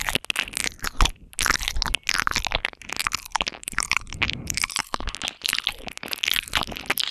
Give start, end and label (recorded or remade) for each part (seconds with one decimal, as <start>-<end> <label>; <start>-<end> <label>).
0.0-3.3 recorded; 3.3-4.8 remade; 4.8-7.1 recorded